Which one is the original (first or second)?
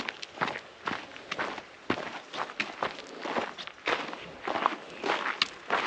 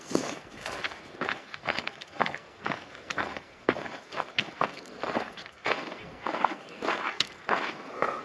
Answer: first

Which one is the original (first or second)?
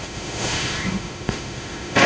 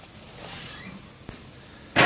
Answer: second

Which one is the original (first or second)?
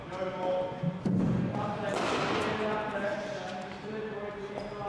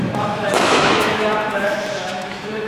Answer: first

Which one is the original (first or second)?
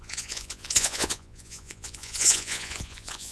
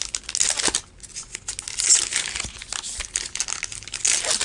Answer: second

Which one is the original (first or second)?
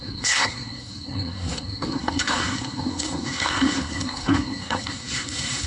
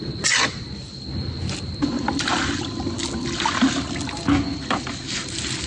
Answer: second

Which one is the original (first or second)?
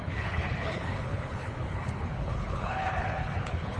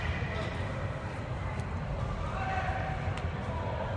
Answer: second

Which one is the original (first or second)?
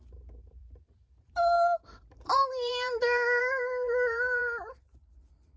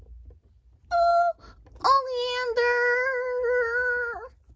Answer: second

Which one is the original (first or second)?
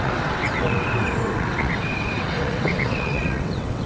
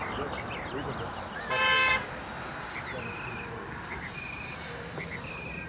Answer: second